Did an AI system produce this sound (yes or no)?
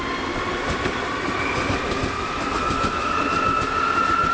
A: no